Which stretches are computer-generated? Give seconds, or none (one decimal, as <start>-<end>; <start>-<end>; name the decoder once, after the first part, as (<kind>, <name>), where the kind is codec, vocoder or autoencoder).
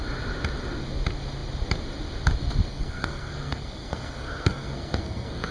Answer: 2.7-5.5 (codec, SNAC)